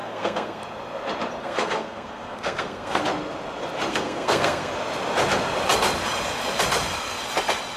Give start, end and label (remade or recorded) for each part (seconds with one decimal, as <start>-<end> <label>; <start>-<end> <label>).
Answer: 0.0-0.6 remade; 0.6-1.4 recorded; 1.4-3.0 remade; 3.0-3.9 recorded; 3.9-4.7 remade; 4.7-7.8 recorded